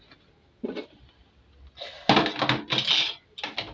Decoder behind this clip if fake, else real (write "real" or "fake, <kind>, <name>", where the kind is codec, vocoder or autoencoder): real